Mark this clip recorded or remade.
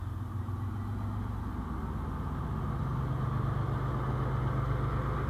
recorded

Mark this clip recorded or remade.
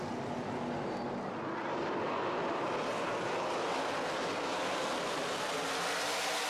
recorded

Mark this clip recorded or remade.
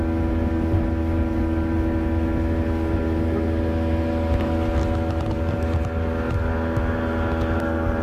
recorded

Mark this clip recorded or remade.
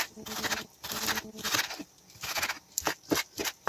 recorded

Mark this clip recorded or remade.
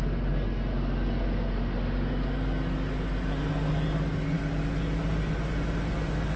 recorded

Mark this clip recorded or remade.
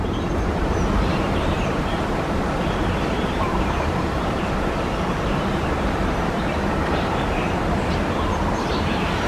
remade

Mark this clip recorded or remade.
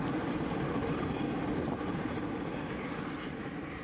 recorded